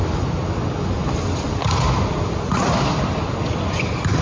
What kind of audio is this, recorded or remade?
recorded